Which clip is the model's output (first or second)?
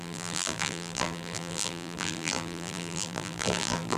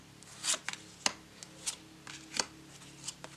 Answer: first